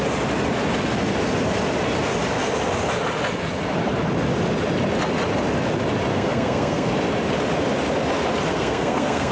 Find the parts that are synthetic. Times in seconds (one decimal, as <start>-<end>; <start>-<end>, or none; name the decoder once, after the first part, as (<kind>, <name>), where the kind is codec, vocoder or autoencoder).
6.1-6.9 (codec, SNAC); 8.5-9.3